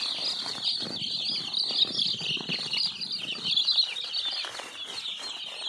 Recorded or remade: recorded